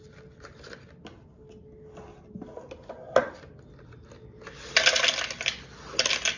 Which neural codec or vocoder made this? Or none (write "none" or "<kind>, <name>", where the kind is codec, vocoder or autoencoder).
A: none